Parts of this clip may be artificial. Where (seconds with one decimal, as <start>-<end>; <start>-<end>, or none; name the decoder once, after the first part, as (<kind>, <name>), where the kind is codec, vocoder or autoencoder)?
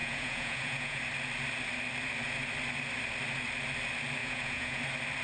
0.0-1.0 (vocoder, Vocos); 4.2-4.8